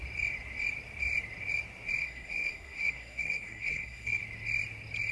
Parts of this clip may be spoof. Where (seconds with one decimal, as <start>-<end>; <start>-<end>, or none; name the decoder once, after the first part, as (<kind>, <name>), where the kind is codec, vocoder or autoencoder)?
2.0-4.2 (codec, SNAC)